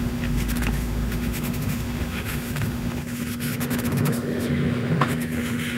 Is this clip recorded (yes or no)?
no